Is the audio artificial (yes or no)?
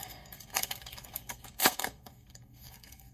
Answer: yes